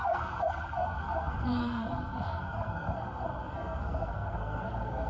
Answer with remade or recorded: remade